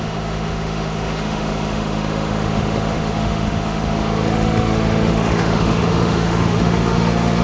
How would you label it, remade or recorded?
remade